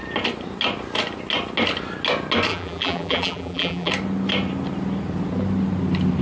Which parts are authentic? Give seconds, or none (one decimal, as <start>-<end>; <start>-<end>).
0.0-2.5; 3.9-6.2